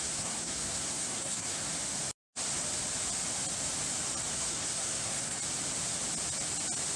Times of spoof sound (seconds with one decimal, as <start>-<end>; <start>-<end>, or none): 0.0-1.7; 4.3-5.4